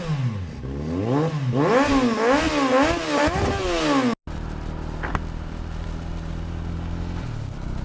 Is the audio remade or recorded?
recorded